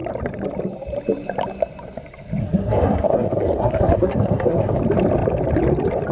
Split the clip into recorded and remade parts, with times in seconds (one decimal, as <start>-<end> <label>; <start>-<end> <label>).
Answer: 0.0-2.4 recorded; 2.4-4.8 remade; 4.8-6.1 recorded